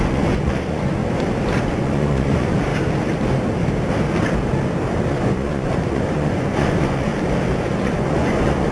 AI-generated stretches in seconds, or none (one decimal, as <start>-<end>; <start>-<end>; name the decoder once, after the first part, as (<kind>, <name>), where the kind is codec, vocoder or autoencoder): 0.0-1.0 (vocoder, Vocos); 1.7-2.7; 5.1-7.1; 7.6-8.7